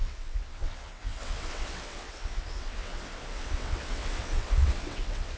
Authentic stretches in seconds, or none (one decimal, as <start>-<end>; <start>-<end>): none